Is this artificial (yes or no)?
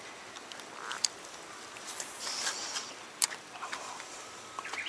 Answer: no